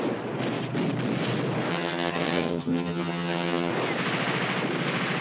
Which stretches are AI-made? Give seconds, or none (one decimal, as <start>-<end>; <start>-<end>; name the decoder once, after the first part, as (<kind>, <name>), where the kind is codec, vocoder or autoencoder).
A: 1.7-3.7 (vocoder, HiFi-GAN)